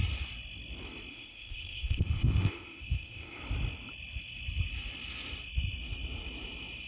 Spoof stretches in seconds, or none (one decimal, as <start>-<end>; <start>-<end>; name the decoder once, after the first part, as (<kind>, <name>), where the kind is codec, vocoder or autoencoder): 1.1-3.4 (codec, ZipCodec)